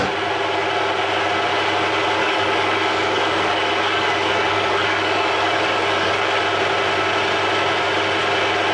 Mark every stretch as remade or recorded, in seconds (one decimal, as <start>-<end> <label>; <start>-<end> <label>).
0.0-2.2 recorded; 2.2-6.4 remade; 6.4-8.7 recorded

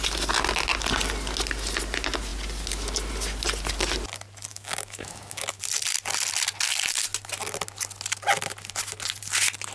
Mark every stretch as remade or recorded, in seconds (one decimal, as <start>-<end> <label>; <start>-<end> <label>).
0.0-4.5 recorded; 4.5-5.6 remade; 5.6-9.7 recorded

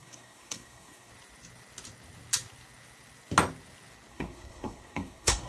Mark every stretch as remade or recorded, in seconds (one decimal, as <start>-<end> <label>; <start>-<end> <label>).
0.0-1.1 remade; 1.1-4.1 recorded; 4.1-5.5 remade